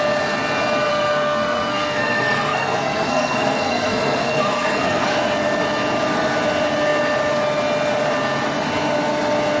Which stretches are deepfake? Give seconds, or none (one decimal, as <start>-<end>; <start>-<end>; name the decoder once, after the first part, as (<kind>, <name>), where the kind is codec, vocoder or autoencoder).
0.9-5.1 (codec, SNAC)